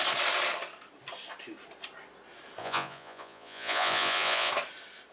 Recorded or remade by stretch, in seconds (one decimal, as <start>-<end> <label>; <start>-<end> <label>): 0.0-2.6 recorded; 2.6-4.5 remade; 4.5-5.1 recorded